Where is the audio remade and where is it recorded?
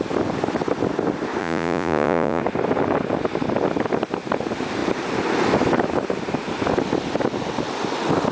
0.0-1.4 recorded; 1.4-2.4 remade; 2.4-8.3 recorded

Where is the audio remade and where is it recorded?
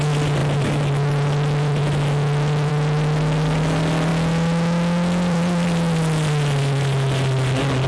0.0-7.9 recorded